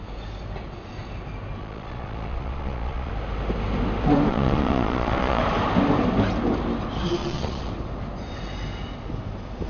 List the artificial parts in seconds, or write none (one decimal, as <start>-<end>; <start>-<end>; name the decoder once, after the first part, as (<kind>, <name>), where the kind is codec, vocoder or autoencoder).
1.6-3.1 (vocoder, Vocos); 4.3-5.4; 7.2-7.7